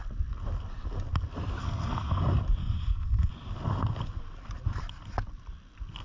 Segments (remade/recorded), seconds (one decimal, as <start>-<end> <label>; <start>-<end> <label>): 0.0-1.6 recorded; 1.6-2.2 remade; 2.2-2.6 recorded; 2.6-3.3 remade; 3.3-6.0 recorded

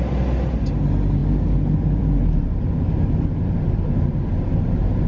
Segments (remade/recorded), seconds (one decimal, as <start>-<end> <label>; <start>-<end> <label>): 0.0-5.1 recorded

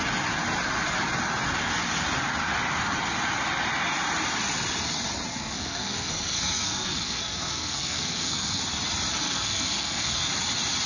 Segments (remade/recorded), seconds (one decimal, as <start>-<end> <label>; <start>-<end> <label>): 0.0-5.3 recorded; 5.3-8.6 remade; 8.6-9.1 recorded; 9.1-10.2 remade; 10.2-10.9 recorded

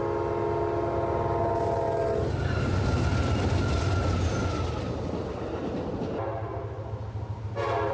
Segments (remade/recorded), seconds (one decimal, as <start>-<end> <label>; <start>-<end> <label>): 0.0-7.9 recorded